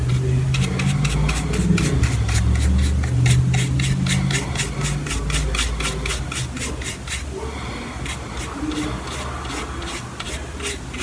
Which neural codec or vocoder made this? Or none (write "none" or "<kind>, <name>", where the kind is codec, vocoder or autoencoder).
none